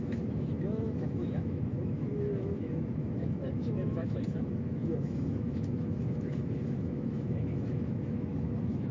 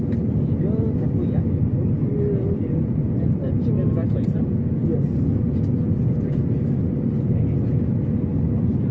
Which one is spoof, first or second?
first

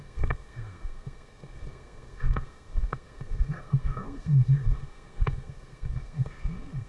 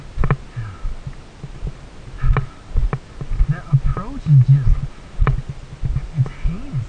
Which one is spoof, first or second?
first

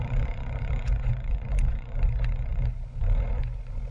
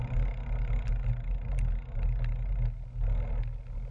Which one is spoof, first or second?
first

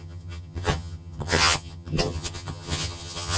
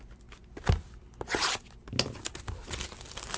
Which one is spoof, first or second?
first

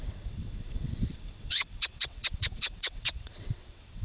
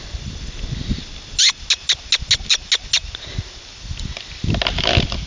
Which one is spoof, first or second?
first